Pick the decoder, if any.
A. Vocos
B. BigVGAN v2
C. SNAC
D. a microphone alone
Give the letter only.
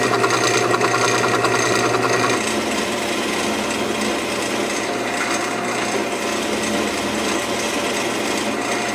D